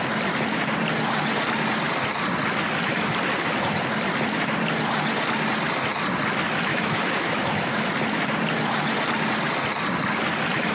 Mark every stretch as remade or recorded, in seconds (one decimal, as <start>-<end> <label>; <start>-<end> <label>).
0.0-6.7 recorded; 6.7-7.9 remade; 7.9-10.7 recorded